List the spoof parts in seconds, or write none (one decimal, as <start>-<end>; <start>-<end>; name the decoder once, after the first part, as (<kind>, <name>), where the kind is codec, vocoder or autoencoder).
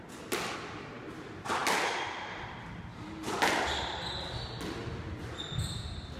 none